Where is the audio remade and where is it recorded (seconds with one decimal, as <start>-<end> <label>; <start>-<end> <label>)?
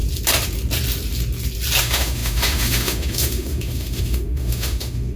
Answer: 0.0-1.8 recorded; 1.8-5.2 remade